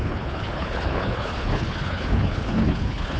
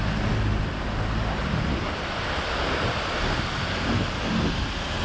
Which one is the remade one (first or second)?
first